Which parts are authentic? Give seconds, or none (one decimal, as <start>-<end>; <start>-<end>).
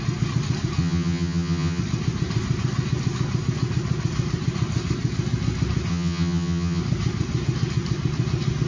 0.0-0.8; 1.8-5.9; 6.8-8.7